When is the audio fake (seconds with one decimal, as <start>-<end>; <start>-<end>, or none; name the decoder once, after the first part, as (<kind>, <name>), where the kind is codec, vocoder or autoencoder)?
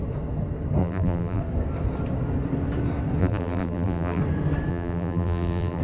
0.8-1.4 (vocoder, BigVGAN v2); 3.2-4.2; 4.7-5.8